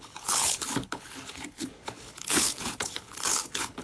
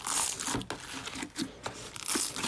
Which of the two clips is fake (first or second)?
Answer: first